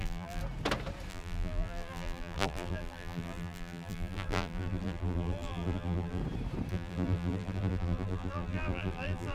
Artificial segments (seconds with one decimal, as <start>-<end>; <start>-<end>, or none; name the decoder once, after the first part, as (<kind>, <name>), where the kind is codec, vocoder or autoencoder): 0.0-0.4 (vocoder, BigVGAN v2); 1.1-6.2; 6.7-9.3